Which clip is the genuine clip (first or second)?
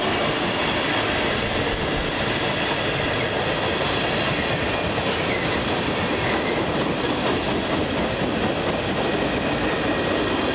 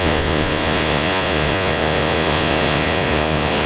first